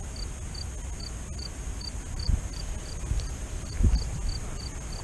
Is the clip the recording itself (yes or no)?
yes